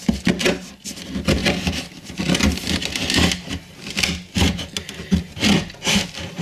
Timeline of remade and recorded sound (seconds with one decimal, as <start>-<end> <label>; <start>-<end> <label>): 0.0-6.4 recorded